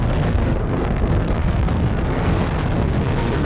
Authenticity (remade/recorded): remade